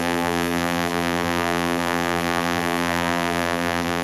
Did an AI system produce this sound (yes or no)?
yes